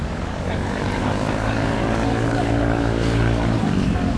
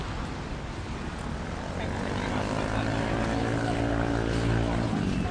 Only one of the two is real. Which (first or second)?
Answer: second